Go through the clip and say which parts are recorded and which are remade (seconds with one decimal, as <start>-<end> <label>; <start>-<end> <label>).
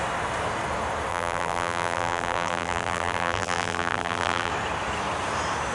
0.0-1.1 recorded; 1.1-4.5 remade; 4.5-5.7 recorded